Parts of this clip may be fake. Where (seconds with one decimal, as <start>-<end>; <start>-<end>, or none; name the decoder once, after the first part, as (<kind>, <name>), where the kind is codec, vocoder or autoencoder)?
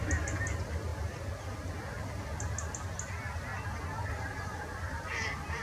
none